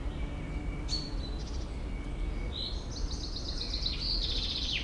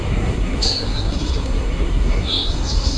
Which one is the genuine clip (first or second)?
first